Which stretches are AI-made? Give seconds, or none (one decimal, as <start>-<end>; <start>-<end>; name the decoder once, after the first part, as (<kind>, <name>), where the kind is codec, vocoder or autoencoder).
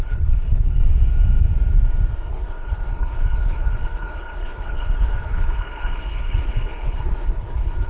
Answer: 0.0-0.8 (codec, HILCodec); 2.3-7.9